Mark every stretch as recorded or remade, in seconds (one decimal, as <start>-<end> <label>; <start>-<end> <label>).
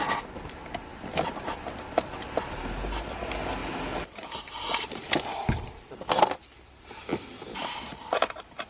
0.0-8.7 recorded